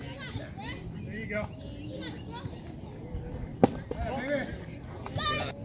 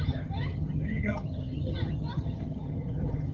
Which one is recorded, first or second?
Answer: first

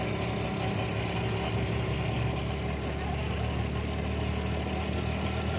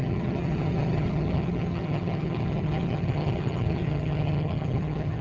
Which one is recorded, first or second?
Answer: first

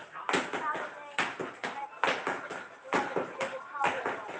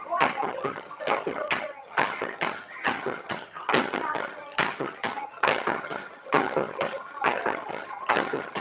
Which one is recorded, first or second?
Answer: first